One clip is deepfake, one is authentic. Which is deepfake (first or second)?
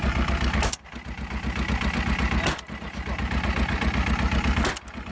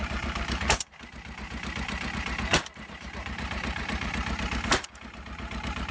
second